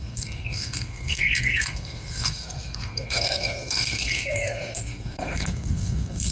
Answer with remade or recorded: remade